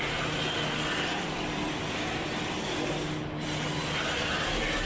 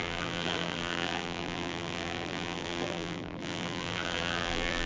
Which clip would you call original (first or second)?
first